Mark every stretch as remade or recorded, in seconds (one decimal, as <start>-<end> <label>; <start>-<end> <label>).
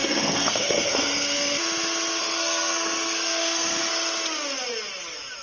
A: 0.0-1.6 remade; 1.6-2.2 recorded; 2.2-3.9 remade; 3.9-5.4 recorded